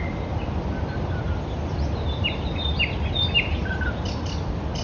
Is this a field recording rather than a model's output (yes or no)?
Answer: yes